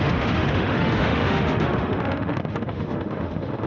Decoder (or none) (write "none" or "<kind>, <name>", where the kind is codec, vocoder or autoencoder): autoencoder, DAC-VAE